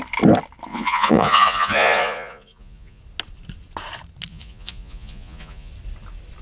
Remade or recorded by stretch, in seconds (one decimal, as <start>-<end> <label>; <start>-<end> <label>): 0.0-0.7 recorded; 0.7-3.0 remade; 3.0-4.3 recorded; 4.3-5.7 remade; 5.7-6.4 recorded